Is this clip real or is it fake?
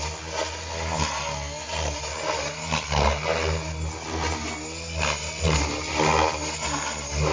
real